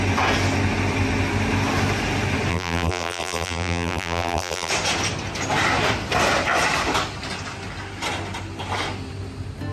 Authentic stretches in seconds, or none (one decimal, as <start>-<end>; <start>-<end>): 0.0-2.5; 4.7-9.7